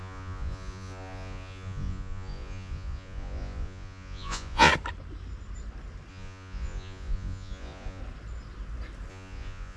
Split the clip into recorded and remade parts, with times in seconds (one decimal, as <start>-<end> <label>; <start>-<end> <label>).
0.0-4.7 remade; 4.7-6.1 recorded; 6.1-8.0 remade; 8.0-9.1 recorded; 9.1-9.8 remade

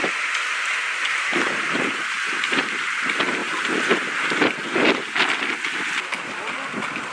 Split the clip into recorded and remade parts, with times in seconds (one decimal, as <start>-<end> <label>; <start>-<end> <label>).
0.0-7.1 recorded

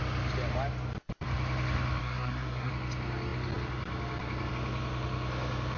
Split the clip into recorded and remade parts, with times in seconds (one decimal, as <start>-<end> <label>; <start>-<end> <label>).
0.0-2.0 recorded; 2.0-2.7 remade; 2.7-5.8 recorded

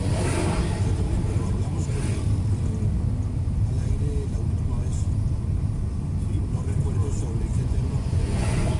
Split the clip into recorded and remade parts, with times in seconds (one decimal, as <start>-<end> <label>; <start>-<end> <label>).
0.0-7.5 recorded; 7.5-8.8 remade

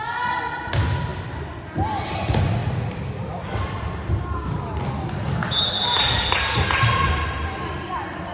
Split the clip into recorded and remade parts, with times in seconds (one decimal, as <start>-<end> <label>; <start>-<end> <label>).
0.0-8.3 recorded